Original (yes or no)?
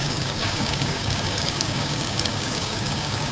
no